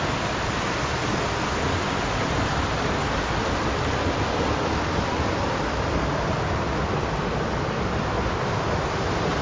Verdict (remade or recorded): recorded